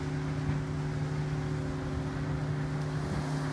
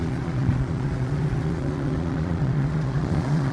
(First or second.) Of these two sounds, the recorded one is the first